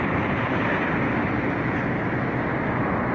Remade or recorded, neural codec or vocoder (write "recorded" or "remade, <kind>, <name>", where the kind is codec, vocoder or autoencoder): recorded